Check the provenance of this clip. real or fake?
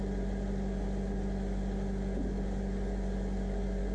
real